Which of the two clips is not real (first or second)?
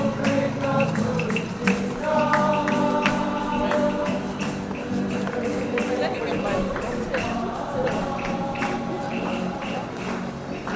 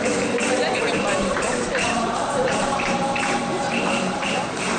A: second